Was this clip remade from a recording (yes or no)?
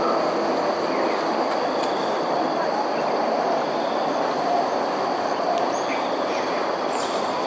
no